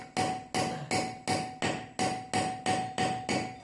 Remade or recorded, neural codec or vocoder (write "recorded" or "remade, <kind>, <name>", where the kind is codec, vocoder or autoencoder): recorded